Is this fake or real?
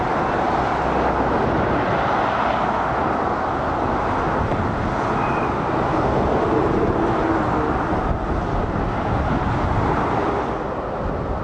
real